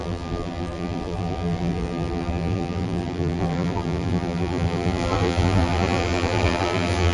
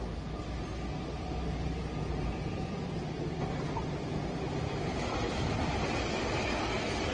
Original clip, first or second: second